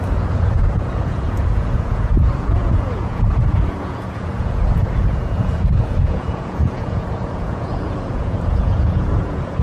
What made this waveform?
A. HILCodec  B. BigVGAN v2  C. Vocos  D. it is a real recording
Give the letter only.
C